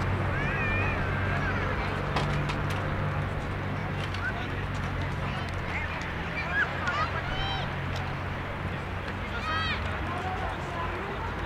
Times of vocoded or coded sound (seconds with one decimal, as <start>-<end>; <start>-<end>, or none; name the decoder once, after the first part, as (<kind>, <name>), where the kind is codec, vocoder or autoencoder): 3.8-5.4 (vocoder, BigVGAN v2); 6.7-7.2